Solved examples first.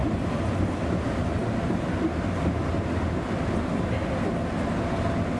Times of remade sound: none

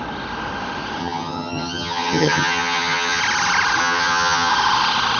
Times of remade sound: 1.0-3.2 (vocoder, HiFi-GAN); 3.8-4.5

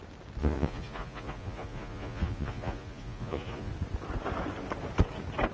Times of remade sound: 0.4-3.7 (vocoder, Vocos)

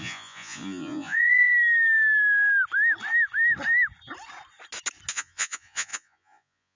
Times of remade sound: 0.0-1.5 (vocoder, Vocos); 5.1-6.8